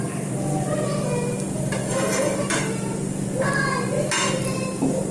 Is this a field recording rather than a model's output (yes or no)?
yes